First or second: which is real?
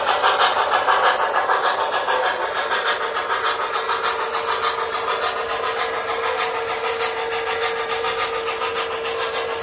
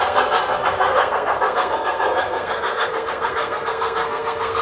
first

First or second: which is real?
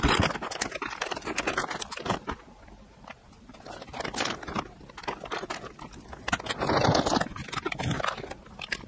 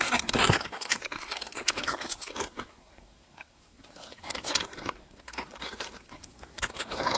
first